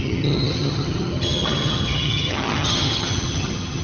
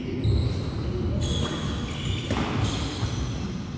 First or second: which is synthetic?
first